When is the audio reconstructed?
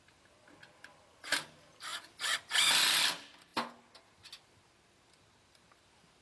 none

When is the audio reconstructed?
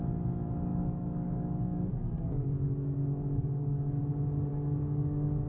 0.7-4.0 (codec, DAC); 4.5-5.5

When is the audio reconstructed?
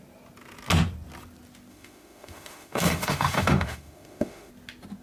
1.7-4.5 (autoencoder, DAC-VAE)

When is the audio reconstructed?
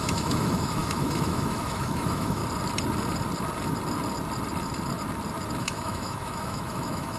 0.0-2.4 (autoencoder, DAC-VAE); 5.6-7.2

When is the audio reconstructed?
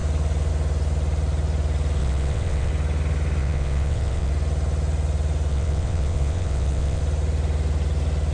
2.0-2.7 (vocoder, WaveNeXt); 3.4-4.3; 5.5-7.0